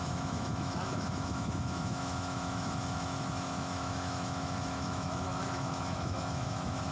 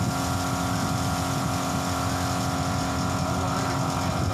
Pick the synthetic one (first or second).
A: first